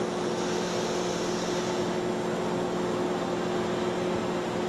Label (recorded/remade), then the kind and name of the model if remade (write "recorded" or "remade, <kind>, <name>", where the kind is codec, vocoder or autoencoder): recorded